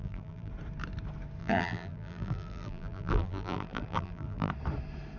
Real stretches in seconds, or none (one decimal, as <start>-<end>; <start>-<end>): 0.5-1.4; 4.5-5.2